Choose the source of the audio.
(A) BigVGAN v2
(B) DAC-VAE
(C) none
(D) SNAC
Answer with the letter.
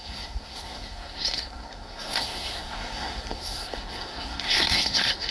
D